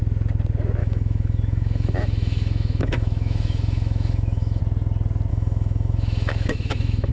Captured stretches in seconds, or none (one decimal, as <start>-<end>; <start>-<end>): 0.0-0.8; 4.6-5.3

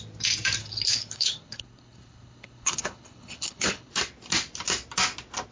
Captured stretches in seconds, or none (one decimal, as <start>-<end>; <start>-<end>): 0.0-0.6; 3.9-5.5

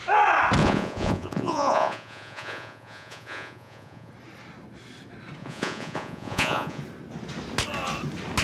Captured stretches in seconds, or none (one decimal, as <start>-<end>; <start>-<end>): 0.0-0.6; 4.1-5.4; 6.8-8.4

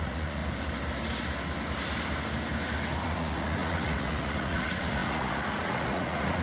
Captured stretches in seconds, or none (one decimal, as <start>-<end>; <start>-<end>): 0.4-3.0

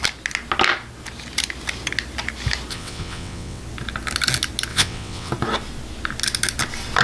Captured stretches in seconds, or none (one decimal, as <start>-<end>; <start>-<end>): 0.0-2.7; 3.6-4.7; 5.3-7.0